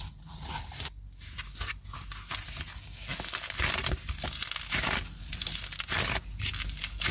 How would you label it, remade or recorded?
recorded